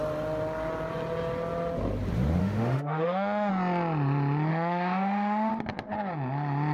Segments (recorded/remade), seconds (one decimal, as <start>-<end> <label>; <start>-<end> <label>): 0.0-2.4 recorded; 2.4-3.5 remade; 3.5-4.5 recorded; 4.5-5.5 remade; 5.5-6.7 recorded